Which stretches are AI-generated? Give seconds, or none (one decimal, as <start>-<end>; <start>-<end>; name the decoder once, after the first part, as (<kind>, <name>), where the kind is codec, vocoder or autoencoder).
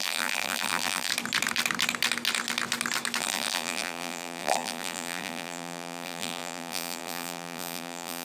0.0-1.1 (vocoder, BigVGAN v2); 3.2-8.2